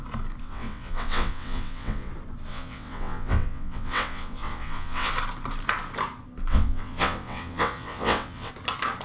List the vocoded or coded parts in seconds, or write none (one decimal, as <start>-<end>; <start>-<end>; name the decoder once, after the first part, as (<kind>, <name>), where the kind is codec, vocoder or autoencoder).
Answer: 0.4-2.1 (vocoder, WaveNeXt); 2.5-5.1; 6.5-8.5